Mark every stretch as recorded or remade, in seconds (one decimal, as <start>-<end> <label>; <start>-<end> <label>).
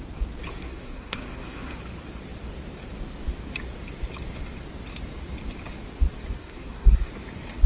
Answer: 0.0-0.5 recorded; 0.5-1.8 remade; 1.8-6.4 recorded; 6.4-7.1 remade; 7.1-7.7 recorded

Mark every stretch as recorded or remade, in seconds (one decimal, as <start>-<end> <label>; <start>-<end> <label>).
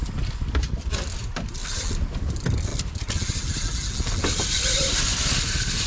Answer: 0.0-0.8 recorded; 0.8-2.7 remade; 2.7-4.7 recorded; 4.7-5.9 remade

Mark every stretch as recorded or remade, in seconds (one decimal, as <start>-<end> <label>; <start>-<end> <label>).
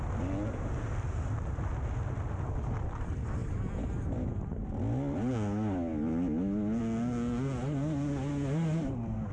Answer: 0.0-9.3 recorded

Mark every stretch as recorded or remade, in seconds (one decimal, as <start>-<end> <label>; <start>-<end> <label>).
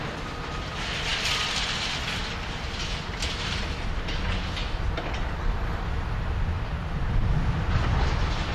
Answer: 0.0-8.5 recorded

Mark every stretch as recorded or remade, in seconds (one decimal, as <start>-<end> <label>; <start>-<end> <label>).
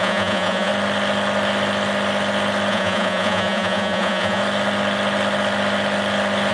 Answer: 0.0-0.7 remade; 0.7-2.7 recorded; 2.7-4.4 remade; 4.4-6.5 recorded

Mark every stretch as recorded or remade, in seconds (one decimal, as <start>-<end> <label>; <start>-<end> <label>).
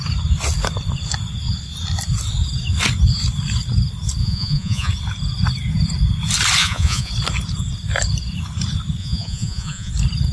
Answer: 0.0-4.2 recorded; 4.2-4.9 remade; 4.9-6.6 recorded; 6.6-7.1 remade; 7.1-9.0 recorded; 9.0-9.9 remade; 9.9-10.3 recorded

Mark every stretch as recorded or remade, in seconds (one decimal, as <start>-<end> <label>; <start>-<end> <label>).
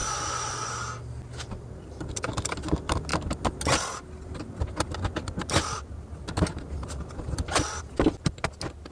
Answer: 0.0-0.7 remade; 0.7-8.9 recorded